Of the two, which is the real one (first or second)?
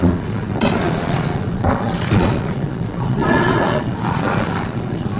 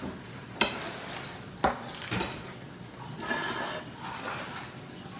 second